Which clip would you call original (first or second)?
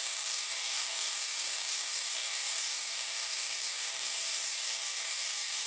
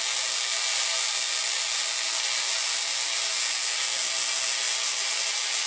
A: second